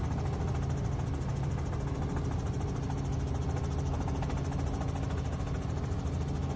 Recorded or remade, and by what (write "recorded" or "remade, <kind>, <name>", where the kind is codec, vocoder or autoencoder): recorded